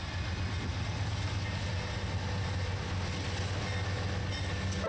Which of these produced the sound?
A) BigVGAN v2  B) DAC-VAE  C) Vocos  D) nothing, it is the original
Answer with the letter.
D